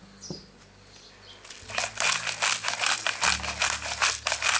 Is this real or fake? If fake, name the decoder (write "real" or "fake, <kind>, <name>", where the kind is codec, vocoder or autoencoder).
real